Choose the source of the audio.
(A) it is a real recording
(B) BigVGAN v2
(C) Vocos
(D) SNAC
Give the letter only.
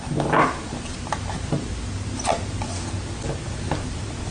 A